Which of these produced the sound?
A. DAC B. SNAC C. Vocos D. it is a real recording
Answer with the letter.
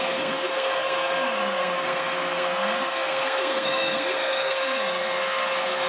B